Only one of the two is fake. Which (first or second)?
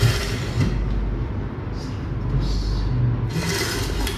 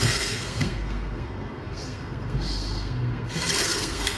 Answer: second